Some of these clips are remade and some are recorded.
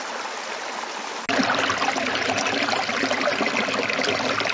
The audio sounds recorded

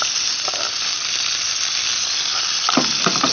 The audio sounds recorded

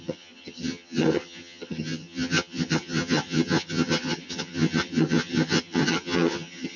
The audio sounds remade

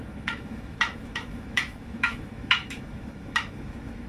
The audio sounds remade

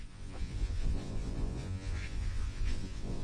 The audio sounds remade